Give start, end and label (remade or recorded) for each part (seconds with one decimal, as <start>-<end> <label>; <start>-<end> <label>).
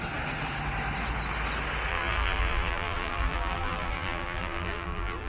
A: 0.0-1.9 recorded; 1.9-5.3 remade